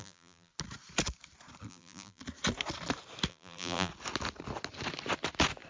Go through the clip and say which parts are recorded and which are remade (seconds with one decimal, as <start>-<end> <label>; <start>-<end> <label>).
0.0-0.5 remade; 0.5-1.7 recorded; 1.7-2.2 remade; 2.2-3.3 recorded; 3.3-3.9 remade; 3.9-5.7 recorded